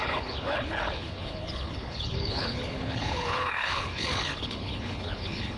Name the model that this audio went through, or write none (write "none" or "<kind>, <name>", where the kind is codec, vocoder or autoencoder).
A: codec, HILCodec